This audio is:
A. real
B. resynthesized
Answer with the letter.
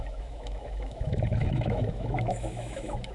B